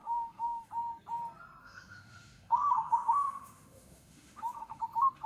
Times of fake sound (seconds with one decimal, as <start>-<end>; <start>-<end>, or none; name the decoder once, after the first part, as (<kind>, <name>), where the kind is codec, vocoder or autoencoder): 0.0-0.7 (autoencoder, DAC-VAE); 1.6-4.8